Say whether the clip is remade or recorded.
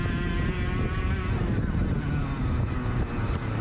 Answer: recorded